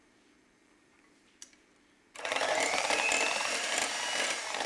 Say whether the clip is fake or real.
fake